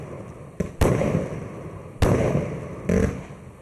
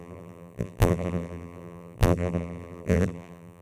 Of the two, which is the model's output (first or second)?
second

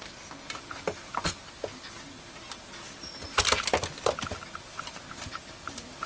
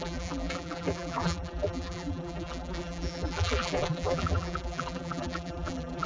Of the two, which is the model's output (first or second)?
second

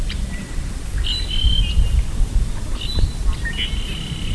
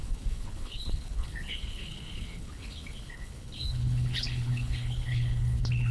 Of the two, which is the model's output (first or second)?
second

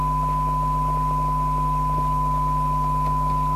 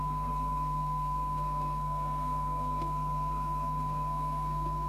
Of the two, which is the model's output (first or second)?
second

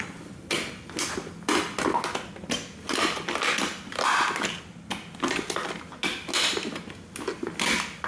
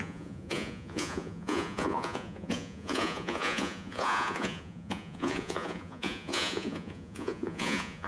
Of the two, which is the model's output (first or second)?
second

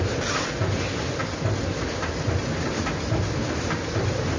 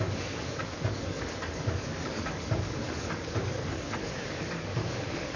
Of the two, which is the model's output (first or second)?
second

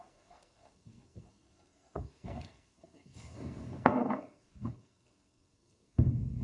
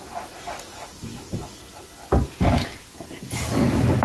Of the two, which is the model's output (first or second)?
first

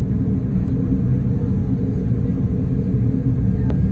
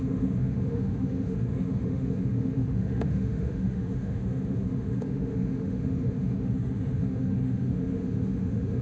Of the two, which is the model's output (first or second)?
second